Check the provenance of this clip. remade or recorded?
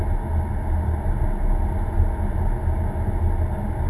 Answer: recorded